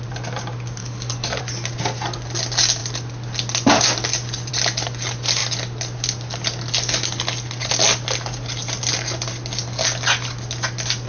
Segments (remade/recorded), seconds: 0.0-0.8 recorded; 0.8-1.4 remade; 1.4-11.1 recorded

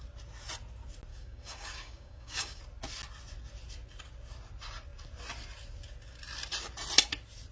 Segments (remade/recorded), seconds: 0.0-1.1 recorded; 1.1-2.6 remade; 2.6-7.5 recorded